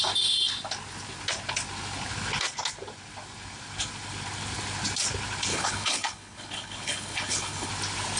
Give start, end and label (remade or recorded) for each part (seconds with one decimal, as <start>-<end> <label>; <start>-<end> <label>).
0.0-5.5 recorded; 5.5-7.7 remade; 7.7-8.2 recorded